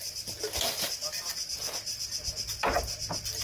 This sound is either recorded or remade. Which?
recorded